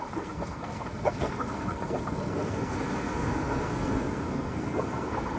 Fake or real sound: fake